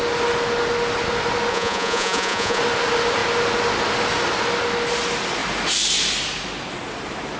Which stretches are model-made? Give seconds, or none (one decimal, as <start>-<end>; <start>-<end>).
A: 1.5-2.6